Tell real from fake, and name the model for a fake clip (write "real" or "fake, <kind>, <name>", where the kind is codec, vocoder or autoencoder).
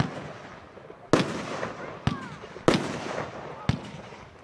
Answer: real